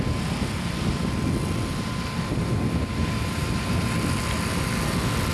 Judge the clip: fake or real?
real